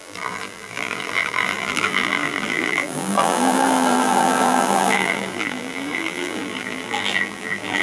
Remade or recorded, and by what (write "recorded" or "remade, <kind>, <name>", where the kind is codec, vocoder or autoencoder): remade, vocoder, BigVGAN v2